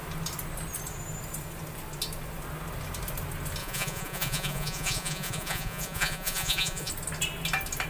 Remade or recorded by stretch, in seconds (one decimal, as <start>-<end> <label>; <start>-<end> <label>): 0.0-3.6 recorded; 3.6-6.9 remade; 6.9-7.9 recorded